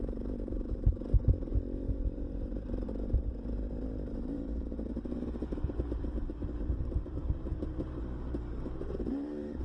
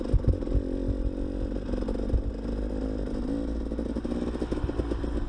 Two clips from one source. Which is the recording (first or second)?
second